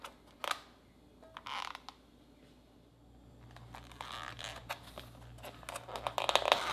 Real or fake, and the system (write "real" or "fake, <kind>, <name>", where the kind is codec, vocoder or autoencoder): real